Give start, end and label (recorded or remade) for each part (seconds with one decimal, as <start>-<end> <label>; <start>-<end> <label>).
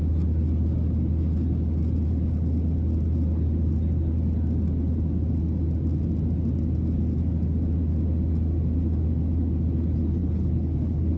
0.0-10.2 recorded; 10.2-11.2 remade